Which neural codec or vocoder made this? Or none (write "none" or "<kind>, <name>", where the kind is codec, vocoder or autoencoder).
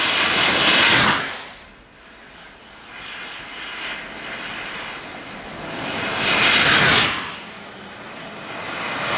none